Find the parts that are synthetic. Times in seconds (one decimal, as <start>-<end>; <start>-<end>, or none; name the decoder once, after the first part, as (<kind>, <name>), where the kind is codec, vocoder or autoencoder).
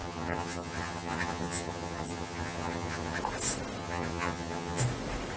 0.0-3.2 (vocoder, HiFi-GAN); 3.8-4.8